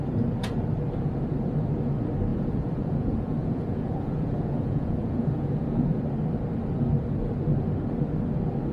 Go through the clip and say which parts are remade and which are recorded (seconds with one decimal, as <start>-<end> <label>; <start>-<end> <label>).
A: 0.0-2.3 recorded; 2.3-6.0 remade; 6.0-8.7 recorded